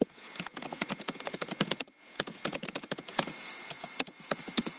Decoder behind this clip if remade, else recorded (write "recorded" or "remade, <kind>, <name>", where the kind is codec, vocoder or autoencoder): remade, vocoder, Vocos